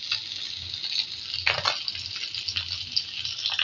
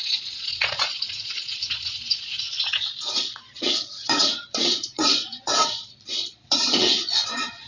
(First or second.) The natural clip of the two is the first